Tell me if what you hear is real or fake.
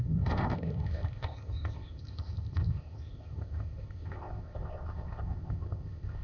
fake